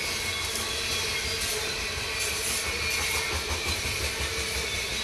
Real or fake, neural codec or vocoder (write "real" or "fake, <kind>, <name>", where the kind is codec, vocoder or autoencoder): real